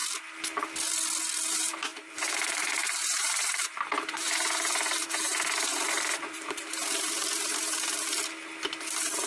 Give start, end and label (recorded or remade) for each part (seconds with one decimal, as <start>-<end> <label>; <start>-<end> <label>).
0.0-1.5 recorded; 1.5-8.2 remade; 8.2-8.9 recorded; 8.9-9.3 remade